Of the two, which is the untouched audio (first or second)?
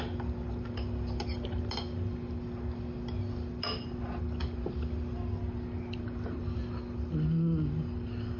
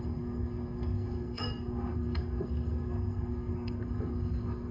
first